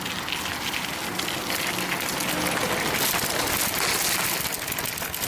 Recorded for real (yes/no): yes